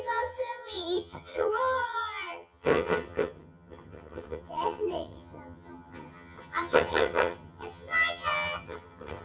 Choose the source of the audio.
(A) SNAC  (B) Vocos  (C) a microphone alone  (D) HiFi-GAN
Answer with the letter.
D